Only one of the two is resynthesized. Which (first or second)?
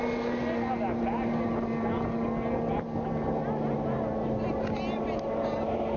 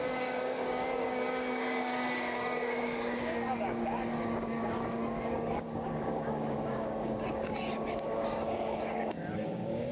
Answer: second